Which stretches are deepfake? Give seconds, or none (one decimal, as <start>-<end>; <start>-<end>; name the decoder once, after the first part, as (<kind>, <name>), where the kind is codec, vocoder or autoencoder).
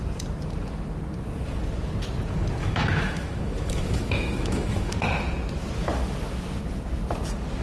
2.6-4.9 (autoencoder, DAC-VAE)